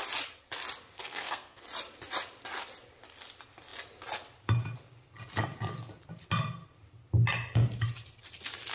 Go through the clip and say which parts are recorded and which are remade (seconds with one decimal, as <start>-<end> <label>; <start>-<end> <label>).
0.0-1.0 recorded; 1.0-1.6 remade; 1.6-8.7 recorded